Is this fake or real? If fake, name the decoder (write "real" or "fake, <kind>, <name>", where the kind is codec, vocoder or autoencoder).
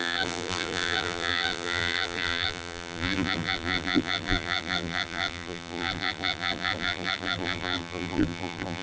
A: fake, vocoder, BigVGAN v2